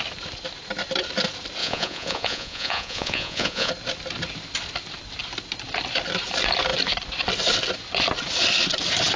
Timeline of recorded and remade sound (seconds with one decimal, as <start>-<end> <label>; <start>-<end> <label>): 0.0-1.6 recorded; 1.6-3.7 remade; 3.7-9.2 recorded